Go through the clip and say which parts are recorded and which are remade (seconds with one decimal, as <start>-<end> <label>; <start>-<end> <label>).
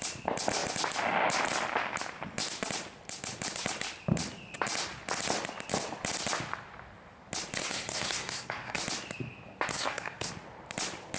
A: 0.0-7.6 recorded; 7.6-8.8 remade; 8.8-9.7 recorded; 9.7-10.3 remade; 10.3-11.2 recorded